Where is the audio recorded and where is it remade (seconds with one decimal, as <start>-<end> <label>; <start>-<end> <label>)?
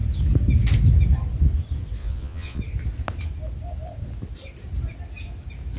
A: 0.0-2.0 recorded; 2.0-2.6 remade; 2.6-5.8 recorded